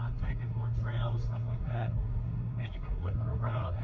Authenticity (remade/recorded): remade